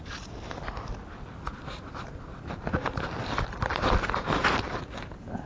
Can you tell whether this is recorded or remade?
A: recorded